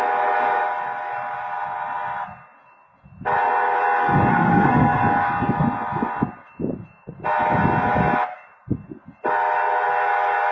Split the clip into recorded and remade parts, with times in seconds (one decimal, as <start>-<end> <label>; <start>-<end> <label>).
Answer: 0.0-4.3 recorded; 4.3-5.0 remade; 5.0-10.5 recorded